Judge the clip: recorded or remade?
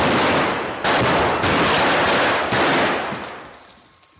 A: recorded